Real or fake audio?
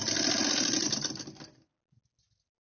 real